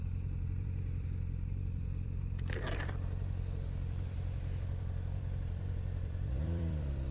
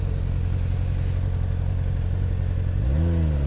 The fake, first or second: first